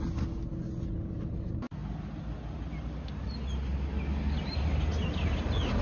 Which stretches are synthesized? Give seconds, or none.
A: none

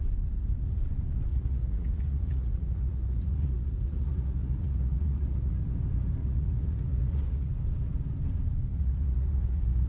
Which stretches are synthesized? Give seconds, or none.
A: 1.3-5.6 (vocoder, Vocos); 6.2-7.5; 8.7-9.9